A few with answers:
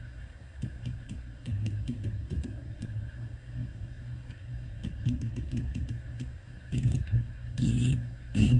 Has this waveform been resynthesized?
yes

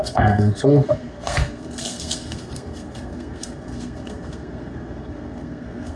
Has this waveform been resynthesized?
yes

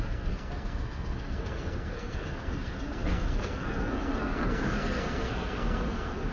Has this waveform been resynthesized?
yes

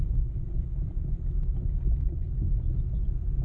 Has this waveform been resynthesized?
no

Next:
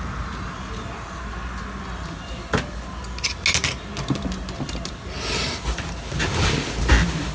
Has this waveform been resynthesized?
no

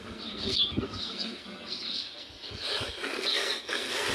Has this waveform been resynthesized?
yes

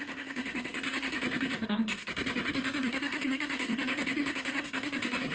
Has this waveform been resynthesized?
yes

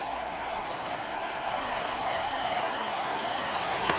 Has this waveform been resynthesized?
yes